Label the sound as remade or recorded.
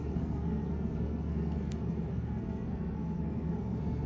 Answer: remade